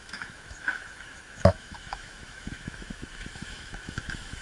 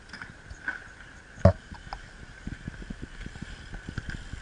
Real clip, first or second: second